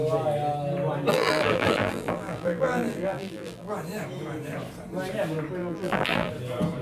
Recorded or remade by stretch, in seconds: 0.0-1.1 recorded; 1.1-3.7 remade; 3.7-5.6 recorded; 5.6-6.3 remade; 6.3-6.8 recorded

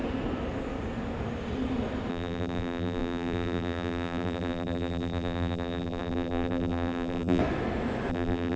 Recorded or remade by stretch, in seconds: 0.0-2.1 recorded; 2.1-7.4 remade; 7.4-8.1 recorded; 8.1-8.6 remade

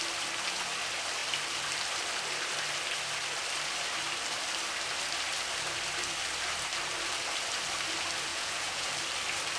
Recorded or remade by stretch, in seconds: 0.0-8.3 recorded; 8.3-8.9 remade; 8.9-9.6 recorded

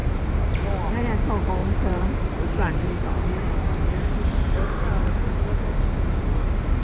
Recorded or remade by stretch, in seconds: 0.0-0.6 remade; 0.6-1.6 recorded; 1.6-3.4 remade; 3.4-6.8 recorded

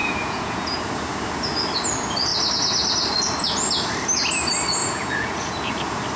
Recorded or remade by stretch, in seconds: 0.0-0.8 remade; 0.8-4.8 recorded; 4.8-5.7 remade; 5.7-6.2 recorded

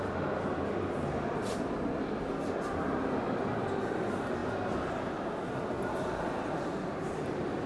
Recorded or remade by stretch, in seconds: 0.0-7.7 recorded